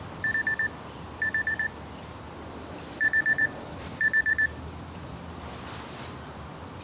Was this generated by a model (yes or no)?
yes